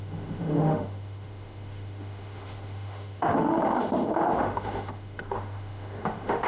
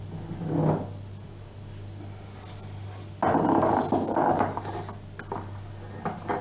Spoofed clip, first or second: first